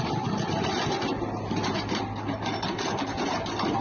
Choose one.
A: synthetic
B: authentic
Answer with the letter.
B